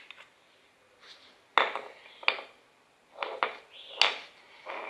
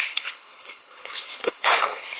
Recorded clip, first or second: first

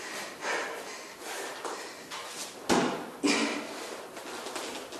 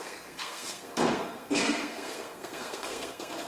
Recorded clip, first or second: first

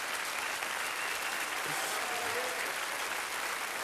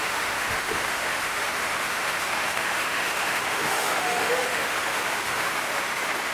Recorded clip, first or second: first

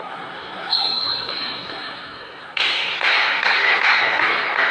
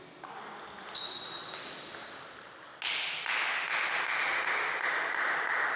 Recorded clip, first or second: second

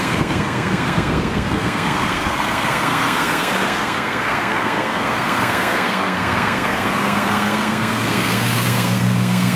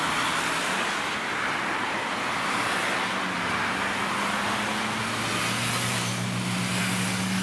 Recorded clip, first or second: second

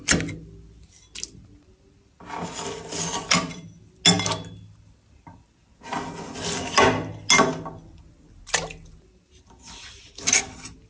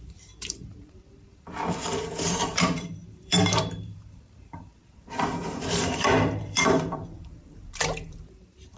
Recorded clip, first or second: first